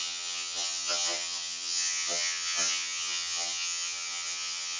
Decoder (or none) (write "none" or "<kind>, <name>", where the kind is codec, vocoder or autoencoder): vocoder, HiFi-GAN